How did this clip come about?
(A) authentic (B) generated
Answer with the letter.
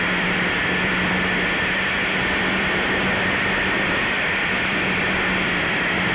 B